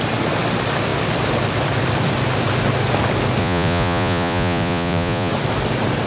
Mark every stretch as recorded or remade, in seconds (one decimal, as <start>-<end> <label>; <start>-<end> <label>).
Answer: 0.0-3.4 recorded; 3.4-5.3 remade; 5.3-6.1 recorded